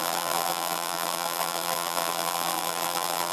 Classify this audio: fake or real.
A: fake